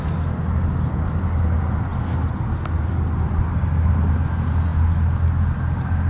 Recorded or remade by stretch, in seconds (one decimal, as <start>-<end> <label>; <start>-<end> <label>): 0.0-6.1 recorded